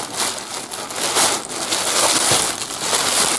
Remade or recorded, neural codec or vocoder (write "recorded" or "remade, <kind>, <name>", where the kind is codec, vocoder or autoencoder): recorded